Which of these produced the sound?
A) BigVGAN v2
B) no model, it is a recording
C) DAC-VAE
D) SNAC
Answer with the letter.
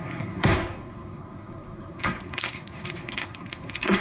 D